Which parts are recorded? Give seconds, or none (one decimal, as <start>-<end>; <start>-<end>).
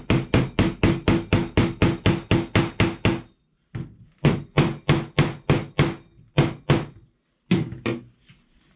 0.0-8.8